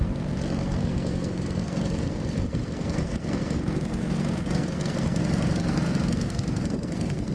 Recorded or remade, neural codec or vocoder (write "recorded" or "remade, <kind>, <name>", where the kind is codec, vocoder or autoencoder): remade, codec, SNAC